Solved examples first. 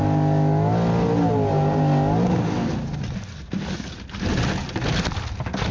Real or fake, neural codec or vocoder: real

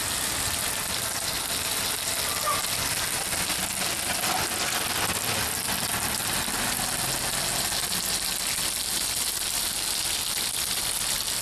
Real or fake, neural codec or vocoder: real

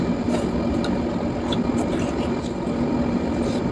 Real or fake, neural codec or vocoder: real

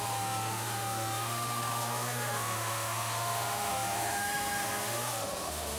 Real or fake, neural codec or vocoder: fake, autoencoder, DAC-VAE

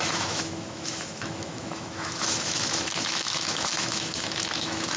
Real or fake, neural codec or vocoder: fake, autoencoder, DAC-VAE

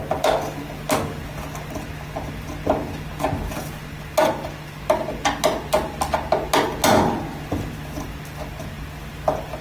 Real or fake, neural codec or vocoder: real